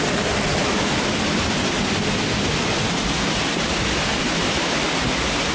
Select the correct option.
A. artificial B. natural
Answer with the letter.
B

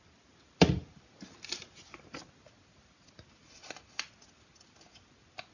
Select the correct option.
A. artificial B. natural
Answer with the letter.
B